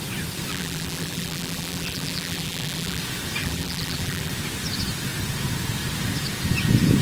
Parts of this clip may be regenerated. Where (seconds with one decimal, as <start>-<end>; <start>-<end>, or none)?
0.5-3.0; 3.4-4.3